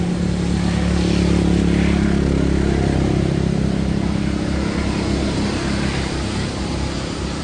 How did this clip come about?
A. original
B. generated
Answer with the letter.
A